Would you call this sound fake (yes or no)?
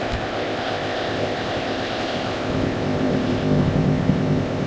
yes